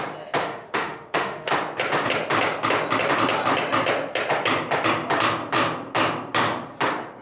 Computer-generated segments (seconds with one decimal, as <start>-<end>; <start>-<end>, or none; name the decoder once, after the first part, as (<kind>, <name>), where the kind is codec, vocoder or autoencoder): 0.4-1.5 (autoencoder, DAC-VAE)